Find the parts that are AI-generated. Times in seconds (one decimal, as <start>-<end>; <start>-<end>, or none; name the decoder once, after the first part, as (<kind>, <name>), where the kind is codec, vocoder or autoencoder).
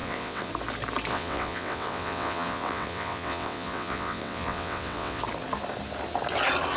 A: 0.0-0.5 (vocoder, WaveNeXt); 1.1-5.2